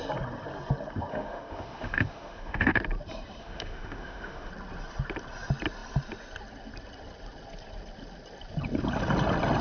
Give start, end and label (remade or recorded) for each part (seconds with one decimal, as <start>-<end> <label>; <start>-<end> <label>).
0.0-1.1 recorded; 1.1-2.8 remade; 2.8-3.4 recorded; 3.4-4.5 remade; 4.5-9.6 recorded